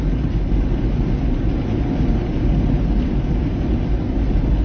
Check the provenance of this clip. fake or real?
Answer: real